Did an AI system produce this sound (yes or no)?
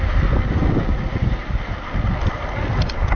no